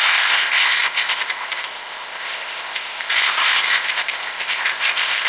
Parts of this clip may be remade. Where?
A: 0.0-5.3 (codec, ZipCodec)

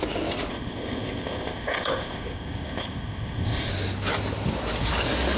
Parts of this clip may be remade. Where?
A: 0.5-3.7 (codec, ZipCodec)